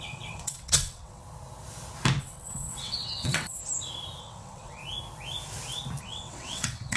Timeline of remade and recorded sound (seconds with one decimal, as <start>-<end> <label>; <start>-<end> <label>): 0.0-1.2 remade; 1.2-2.2 recorded; 2.2-3.6 remade; 3.6-4.2 recorded; 4.2-4.8 remade; 4.8-6.0 recorded; 6.0-7.0 remade